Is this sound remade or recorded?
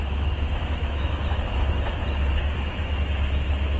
remade